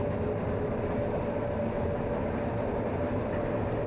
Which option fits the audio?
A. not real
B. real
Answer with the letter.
B